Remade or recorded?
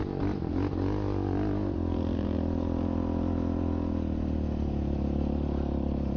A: recorded